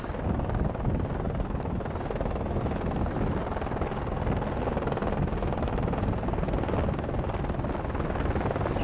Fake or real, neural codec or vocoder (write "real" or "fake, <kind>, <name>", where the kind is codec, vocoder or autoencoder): real